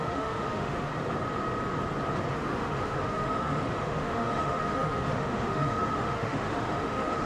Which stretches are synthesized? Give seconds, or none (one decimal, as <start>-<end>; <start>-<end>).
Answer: 0.0-0.9; 2.3-7.3